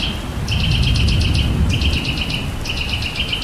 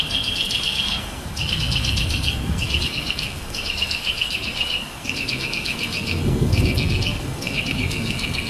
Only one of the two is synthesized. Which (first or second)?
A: second